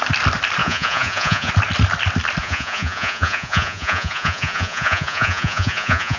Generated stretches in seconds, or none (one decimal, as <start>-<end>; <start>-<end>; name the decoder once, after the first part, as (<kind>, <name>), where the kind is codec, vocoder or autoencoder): 0.6-1.5 (vocoder, Vocos); 2.4-6.2